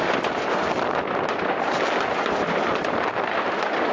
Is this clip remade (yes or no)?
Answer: no